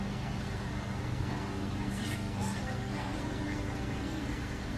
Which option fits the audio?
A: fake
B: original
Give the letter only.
A